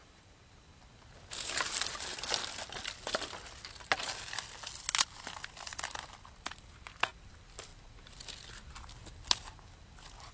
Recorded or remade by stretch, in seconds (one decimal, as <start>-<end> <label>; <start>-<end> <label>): 0.0-10.3 recorded